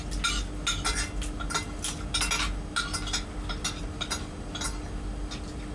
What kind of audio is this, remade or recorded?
recorded